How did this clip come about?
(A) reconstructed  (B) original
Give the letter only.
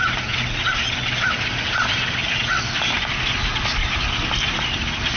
B